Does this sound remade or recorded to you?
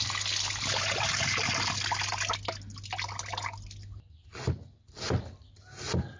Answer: recorded